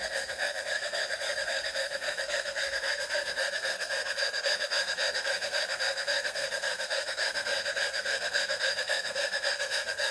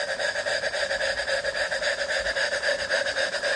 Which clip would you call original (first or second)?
second